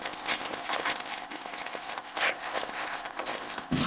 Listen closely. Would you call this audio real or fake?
fake